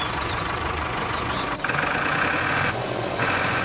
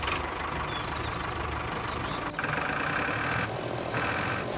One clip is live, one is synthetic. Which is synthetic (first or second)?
first